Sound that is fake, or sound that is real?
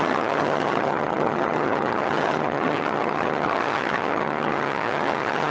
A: fake